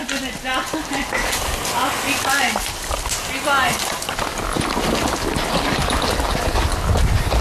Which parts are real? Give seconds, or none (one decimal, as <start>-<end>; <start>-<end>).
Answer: 0.0-7.4